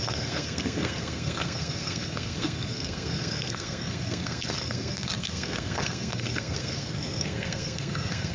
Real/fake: fake